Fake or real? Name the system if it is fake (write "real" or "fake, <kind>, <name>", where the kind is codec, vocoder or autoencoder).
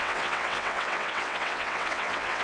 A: fake, vocoder, WaveNeXt